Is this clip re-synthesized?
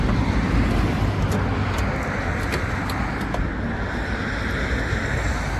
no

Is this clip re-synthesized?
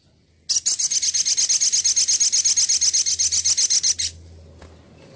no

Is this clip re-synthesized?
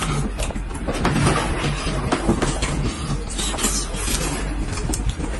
no